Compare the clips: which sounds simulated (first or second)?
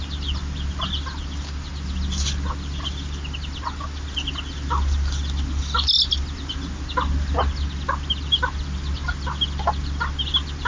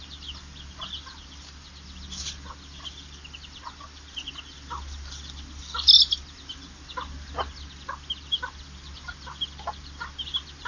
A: second